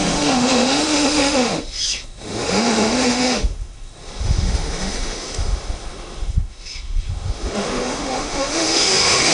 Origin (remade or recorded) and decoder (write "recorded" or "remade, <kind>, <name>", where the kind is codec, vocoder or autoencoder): remade, autoencoder, DAC-VAE